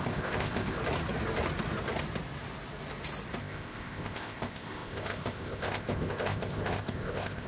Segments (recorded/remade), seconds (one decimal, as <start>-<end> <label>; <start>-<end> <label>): 0.0-0.8 remade; 0.8-3.4 recorded; 3.4-7.5 remade